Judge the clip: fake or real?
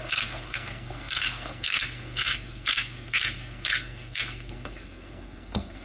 fake